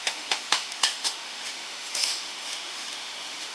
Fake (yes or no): yes